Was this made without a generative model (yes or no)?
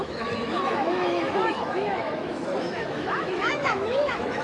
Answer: no